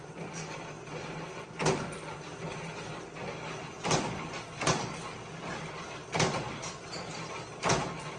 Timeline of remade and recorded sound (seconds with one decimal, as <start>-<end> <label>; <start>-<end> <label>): 0.0-8.2 recorded